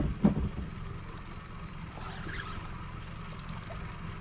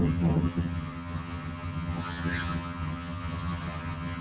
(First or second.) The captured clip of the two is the first